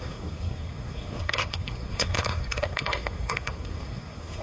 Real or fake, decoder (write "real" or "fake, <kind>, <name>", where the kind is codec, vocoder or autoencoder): fake, codec, SNAC